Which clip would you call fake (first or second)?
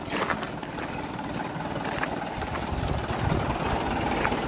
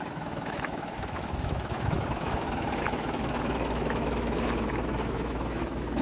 second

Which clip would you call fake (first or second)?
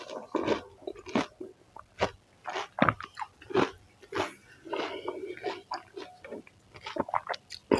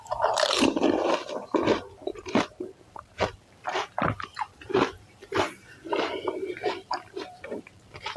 second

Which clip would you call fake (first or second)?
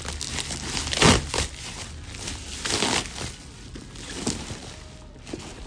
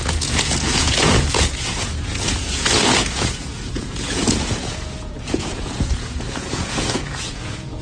second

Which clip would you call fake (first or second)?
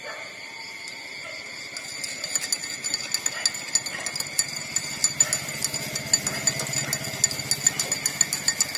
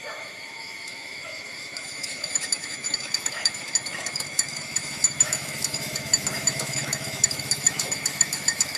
second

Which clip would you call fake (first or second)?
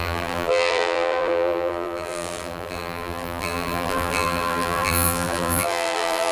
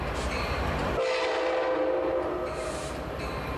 first